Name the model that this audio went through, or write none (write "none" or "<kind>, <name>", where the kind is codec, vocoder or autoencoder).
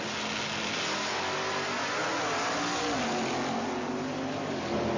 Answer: none